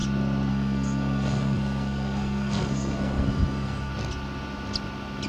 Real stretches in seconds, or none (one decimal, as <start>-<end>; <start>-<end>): 0.0-0.5; 3.9-5.3